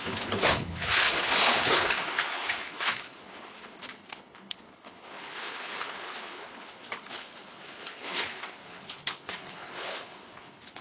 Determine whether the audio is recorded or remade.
remade